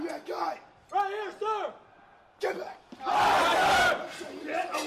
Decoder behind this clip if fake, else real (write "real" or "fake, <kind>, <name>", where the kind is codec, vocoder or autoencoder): real